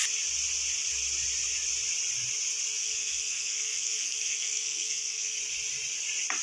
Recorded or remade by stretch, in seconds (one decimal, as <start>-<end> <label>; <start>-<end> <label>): 0.0-2.8 recorded; 2.8-5.4 remade; 5.4-6.4 recorded